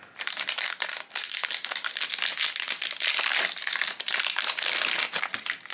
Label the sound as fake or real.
real